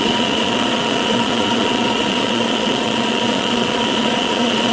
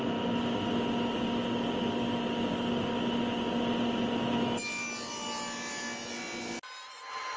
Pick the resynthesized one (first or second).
first